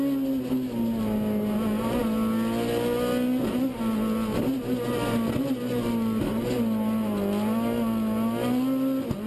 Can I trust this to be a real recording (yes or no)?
yes